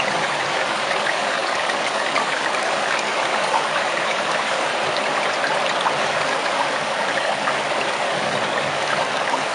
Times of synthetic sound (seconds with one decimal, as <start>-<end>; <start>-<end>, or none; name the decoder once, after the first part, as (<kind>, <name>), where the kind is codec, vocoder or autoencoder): 0.0-4.7 (codec, DAC); 6.0-9.5